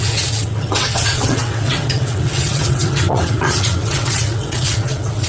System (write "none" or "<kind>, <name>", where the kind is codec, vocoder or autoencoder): vocoder, WaveNeXt